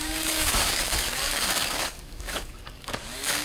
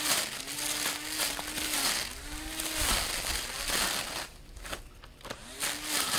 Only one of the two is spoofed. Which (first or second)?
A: first